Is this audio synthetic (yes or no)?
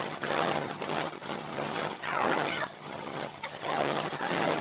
yes